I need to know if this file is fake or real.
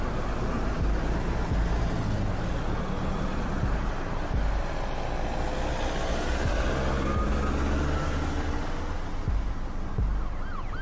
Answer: real